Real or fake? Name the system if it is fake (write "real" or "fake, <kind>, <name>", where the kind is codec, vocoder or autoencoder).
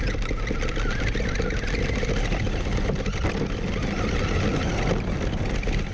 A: real